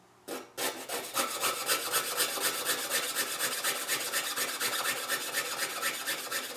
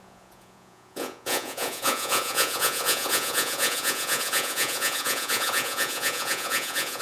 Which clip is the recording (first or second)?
first